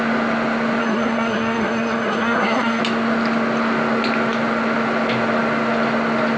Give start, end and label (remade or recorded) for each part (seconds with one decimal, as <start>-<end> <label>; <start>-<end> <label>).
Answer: 0.0-0.8 recorded; 0.8-2.8 remade; 2.8-6.4 recorded